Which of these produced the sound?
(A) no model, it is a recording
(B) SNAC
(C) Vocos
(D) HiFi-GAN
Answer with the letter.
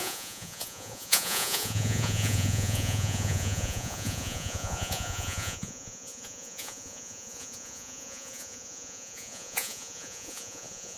C